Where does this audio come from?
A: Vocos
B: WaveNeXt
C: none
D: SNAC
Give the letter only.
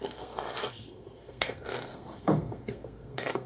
D